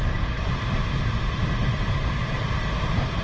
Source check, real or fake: fake